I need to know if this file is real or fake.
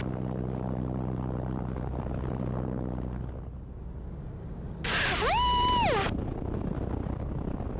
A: real